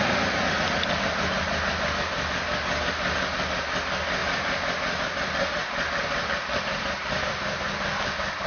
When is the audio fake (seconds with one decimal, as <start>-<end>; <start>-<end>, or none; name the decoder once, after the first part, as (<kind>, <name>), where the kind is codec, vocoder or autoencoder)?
none